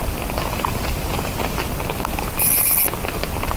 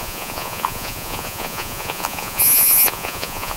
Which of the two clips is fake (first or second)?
second